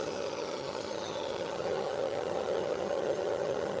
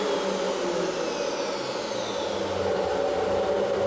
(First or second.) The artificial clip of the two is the first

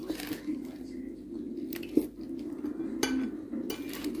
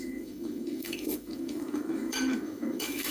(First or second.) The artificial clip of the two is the second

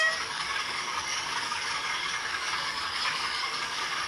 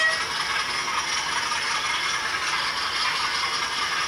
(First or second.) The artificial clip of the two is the first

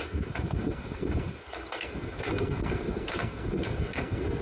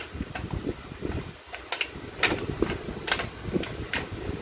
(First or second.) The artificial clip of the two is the first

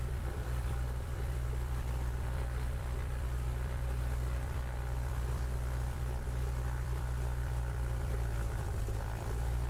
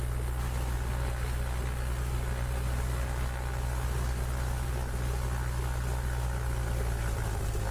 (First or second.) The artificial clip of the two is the first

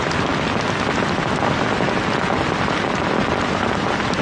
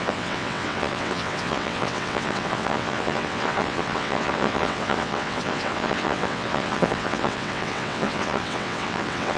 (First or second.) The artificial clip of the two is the second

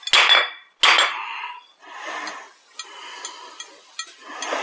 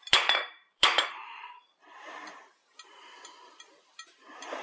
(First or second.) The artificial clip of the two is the second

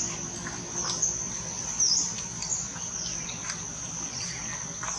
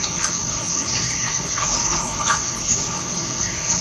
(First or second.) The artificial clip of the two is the second